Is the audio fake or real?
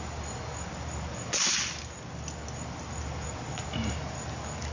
real